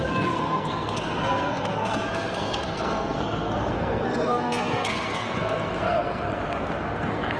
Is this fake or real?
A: fake